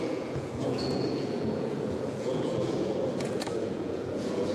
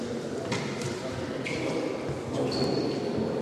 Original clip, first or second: second